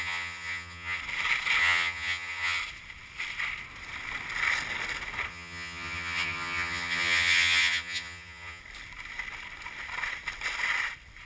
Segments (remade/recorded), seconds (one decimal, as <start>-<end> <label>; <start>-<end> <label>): 0.0-1.0 remade; 1.0-1.6 recorded; 1.6-2.6 remade; 2.6-5.3 recorded; 5.3-8.6 remade; 8.6-11.3 recorded